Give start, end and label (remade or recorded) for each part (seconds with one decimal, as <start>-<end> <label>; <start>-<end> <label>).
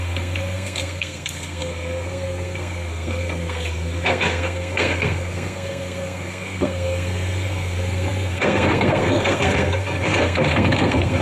0.0-11.2 remade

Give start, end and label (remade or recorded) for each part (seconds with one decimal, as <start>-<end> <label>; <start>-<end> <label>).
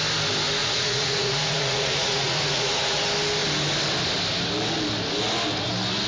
0.0-0.6 recorded; 0.6-3.0 remade; 3.0-6.1 recorded